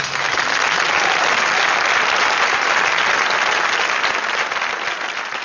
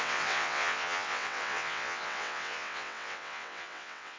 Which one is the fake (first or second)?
second